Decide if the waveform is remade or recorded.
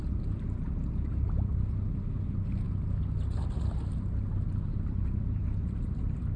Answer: recorded